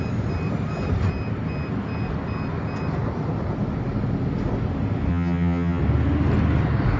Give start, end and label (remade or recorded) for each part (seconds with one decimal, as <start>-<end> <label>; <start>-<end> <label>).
0.0-5.1 recorded; 5.1-5.8 remade; 5.8-7.0 recorded